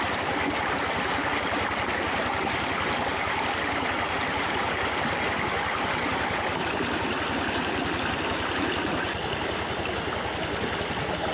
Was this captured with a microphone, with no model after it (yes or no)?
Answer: yes